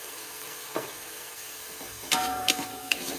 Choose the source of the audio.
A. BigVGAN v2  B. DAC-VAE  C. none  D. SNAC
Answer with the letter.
D